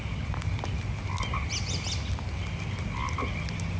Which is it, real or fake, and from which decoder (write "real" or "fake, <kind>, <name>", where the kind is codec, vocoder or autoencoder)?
real